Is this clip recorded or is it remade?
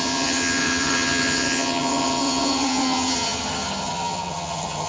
remade